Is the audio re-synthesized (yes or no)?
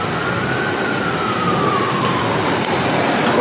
no